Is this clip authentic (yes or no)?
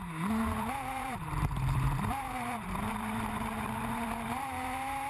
no